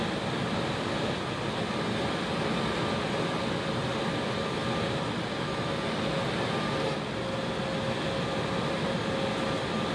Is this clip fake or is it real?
real